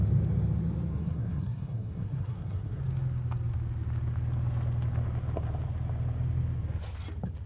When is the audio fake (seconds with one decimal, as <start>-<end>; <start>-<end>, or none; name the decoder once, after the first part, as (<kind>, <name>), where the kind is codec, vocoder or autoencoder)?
0.9-2.8 (codec, SNAC)